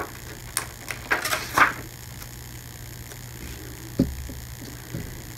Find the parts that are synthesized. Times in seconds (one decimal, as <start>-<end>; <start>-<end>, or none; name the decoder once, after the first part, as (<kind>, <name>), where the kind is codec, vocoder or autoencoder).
none